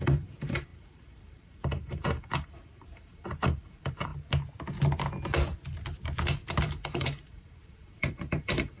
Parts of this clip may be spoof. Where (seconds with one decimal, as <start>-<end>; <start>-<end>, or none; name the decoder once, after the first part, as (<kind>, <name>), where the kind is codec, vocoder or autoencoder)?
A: 0.0-4.1 (vocoder, BigVGAN v2); 6.6-8.8

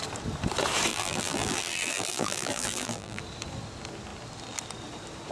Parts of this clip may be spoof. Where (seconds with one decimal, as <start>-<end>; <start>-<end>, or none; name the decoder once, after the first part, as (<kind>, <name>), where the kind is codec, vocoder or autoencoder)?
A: 0.9-3.2 (vocoder, BigVGAN v2)